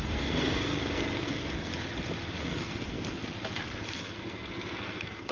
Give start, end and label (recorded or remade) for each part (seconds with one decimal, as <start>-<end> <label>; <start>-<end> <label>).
0.0-1.7 remade; 1.7-2.4 recorded; 2.4-3.2 remade; 3.2-3.9 recorded; 3.9-5.3 remade